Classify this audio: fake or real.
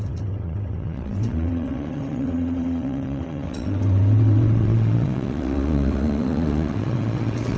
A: fake